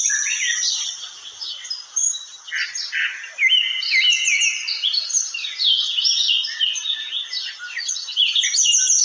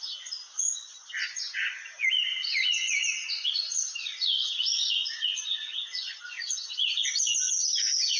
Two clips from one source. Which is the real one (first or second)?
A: first